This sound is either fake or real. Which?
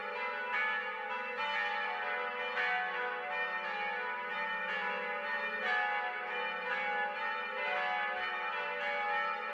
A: real